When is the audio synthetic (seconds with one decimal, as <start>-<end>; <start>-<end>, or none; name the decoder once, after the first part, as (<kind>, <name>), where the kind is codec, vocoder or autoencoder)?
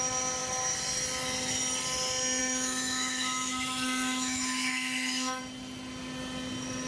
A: 2.4-5.4 (autoencoder, DAC-VAE)